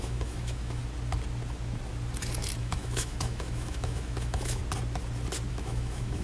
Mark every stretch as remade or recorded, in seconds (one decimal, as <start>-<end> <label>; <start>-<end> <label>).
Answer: 0.0-0.8 remade; 0.8-2.6 recorded; 2.6-4.6 remade; 4.6-5.5 recorded; 5.5-6.2 remade